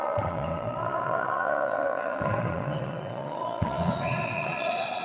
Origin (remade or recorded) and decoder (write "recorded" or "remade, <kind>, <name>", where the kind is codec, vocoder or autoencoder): remade, vocoder, Vocos